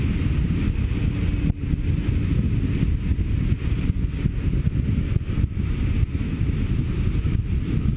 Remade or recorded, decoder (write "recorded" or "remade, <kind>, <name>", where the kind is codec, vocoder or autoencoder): recorded